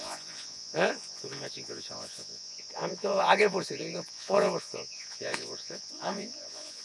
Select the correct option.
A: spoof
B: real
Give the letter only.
A